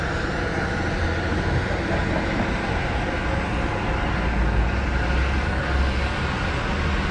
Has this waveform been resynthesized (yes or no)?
no